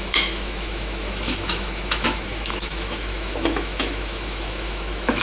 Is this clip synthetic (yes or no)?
yes